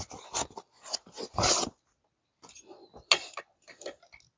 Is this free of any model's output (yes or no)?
yes